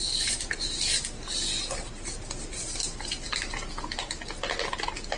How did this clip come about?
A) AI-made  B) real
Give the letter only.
B